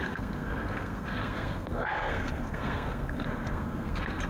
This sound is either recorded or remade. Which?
remade